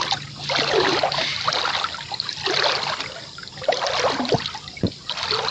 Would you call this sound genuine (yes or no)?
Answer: yes